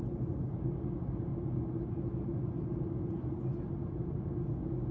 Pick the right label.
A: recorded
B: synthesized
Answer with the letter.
A